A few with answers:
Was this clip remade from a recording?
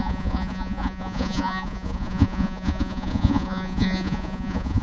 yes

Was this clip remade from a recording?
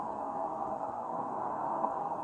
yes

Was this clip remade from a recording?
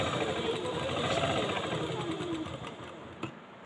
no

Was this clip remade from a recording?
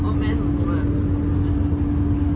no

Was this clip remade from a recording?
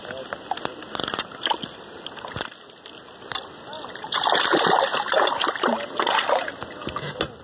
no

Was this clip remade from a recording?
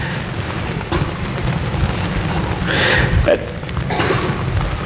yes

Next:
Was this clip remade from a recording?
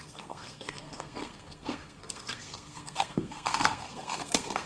yes